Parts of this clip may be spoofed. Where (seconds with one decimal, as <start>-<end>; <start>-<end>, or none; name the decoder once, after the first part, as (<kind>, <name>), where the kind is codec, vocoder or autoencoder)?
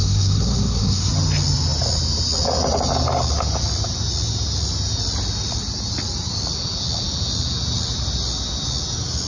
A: 0.0-1.1 (codec, SNAC)